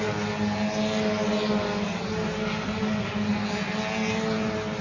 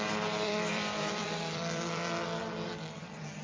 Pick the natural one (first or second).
first